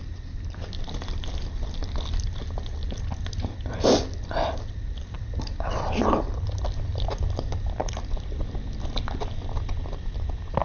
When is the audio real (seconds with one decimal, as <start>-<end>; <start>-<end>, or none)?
0.0-10.6